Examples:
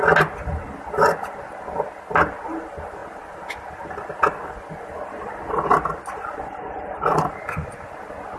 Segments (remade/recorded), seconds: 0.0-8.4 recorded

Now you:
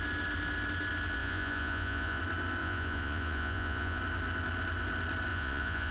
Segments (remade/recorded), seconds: 0.0-1.2 recorded; 1.2-2.2 remade; 2.2-2.6 recorded; 2.6-4.0 remade; 4.0-5.3 recorded; 5.3-5.9 remade

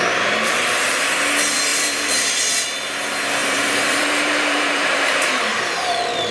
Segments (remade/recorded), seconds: 0.0-1.7 recorded; 1.7-2.3 remade; 2.3-3.4 recorded; 3.4-5.4 remade; 5.4-6.3 recorded

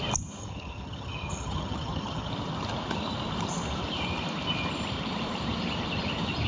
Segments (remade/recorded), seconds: 0.0-0.4 recorded; 0.4-2.3 remade; 2.3-6.5 recorded

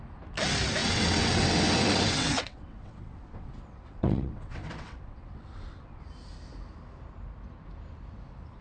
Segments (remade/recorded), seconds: 0.0-0.8 recorded; 0.8-6.0 remade; 6.0-8.6 recorded

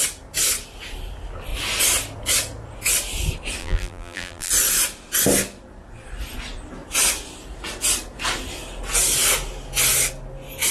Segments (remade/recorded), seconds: 0.0-3.6 recorded; 3.6-4.5 remade; 4.5-10.7 recorded